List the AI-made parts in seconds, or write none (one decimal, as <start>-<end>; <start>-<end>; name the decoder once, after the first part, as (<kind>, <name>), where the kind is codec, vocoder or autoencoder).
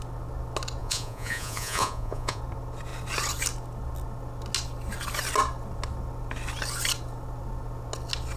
0.8-2.4 (vocoder, Vocos)